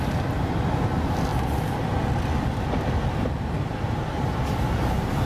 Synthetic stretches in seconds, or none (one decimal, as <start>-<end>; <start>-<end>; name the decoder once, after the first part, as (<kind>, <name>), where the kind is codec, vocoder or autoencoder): none